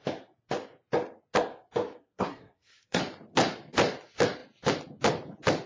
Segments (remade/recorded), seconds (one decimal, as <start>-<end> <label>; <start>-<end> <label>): 0.0-2.0 recorded; 2.0-3.0 remade; 3.0-5.7 recorded